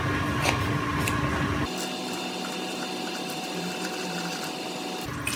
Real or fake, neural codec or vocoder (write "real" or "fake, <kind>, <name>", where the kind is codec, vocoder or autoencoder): real